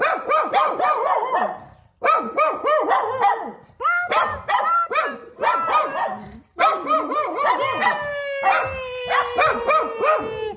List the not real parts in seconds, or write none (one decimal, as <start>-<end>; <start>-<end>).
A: none